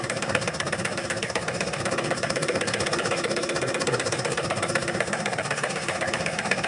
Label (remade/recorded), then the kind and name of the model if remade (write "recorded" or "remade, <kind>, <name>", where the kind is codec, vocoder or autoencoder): remade, codec, SNAC